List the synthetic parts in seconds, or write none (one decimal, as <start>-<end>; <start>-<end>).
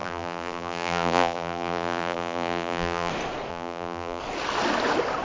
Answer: 0.0-3.1; 3.5-4.2